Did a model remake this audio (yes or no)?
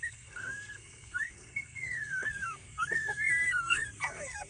yes